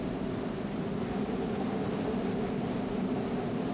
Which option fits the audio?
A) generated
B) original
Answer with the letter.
B